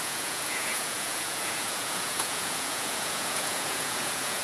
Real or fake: fake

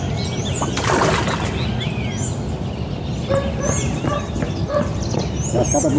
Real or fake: real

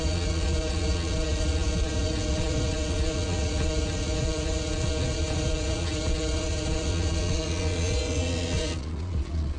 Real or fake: fake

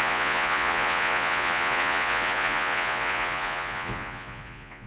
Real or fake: fake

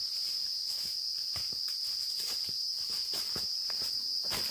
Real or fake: real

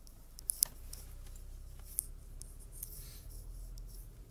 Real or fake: real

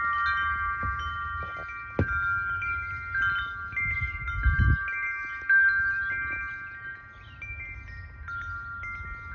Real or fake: real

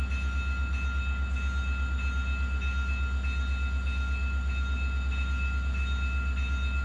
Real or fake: real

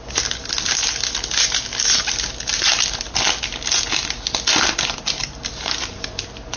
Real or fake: real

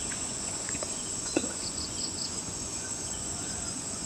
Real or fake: fake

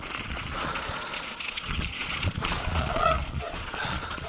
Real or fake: fake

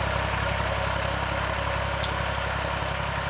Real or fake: real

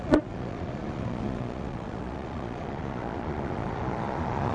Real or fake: fake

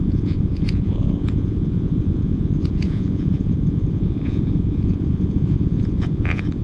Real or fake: fake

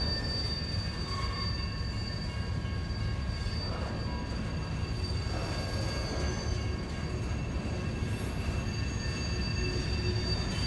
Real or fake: real